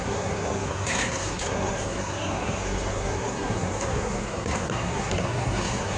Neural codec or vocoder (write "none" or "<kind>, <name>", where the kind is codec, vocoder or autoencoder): codec, SNAC